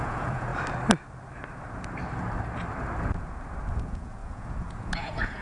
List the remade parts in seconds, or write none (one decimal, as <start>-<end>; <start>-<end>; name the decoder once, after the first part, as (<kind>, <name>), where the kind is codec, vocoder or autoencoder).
0.0-0.5 (vocoder, Vocos); 3.7-5.4

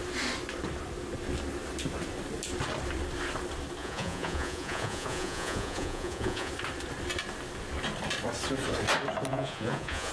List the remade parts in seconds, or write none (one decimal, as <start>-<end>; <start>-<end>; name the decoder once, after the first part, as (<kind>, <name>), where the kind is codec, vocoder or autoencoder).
3.8-6.5 (vocoder, Vocos); 9.3-10.1

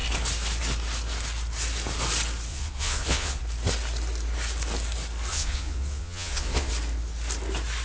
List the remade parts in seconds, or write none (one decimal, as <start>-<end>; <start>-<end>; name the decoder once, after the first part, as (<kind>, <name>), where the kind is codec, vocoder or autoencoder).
2.5-3.4 (vocoder, Vocos); 5.3-6.7

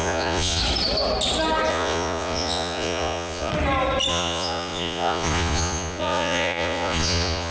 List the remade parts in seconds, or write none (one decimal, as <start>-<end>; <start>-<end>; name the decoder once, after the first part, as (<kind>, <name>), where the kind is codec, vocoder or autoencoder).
0.0-0.6 (vocoder, Vocos); 1.7-3.5; 4.1-7.5

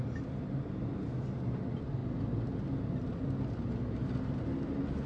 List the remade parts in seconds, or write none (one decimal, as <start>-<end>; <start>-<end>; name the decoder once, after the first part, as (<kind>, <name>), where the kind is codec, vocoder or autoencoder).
none

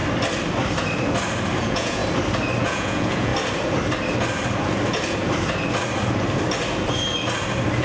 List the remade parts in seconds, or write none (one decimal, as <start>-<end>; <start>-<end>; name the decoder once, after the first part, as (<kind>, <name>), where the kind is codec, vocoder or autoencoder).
1.6-2.0 (vocoder, Vocos); 2.6-3.3

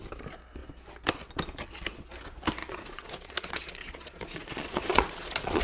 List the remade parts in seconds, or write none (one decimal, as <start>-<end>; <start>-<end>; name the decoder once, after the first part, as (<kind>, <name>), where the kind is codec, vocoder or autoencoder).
2.6-5.6 (vocoder, Vocos)